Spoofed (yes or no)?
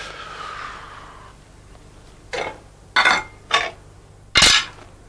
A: no